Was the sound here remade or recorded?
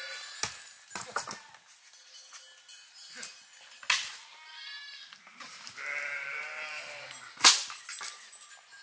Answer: recorded